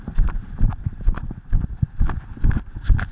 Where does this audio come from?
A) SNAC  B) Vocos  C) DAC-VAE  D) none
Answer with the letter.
D